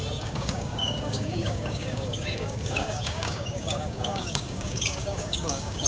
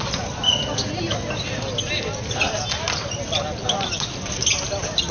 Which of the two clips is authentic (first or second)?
second